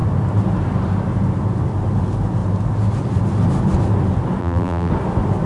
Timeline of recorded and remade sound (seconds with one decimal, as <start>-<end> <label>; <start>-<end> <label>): 0.0-4.4 recorded; 4.4-4.9 remade; 4.9-5.5 recorded